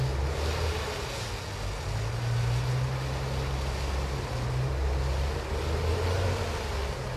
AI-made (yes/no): no